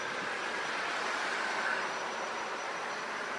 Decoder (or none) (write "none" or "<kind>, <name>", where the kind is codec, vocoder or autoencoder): none